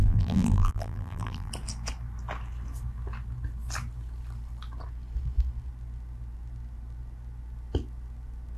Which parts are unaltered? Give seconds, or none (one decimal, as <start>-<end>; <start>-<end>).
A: 1.5-8.6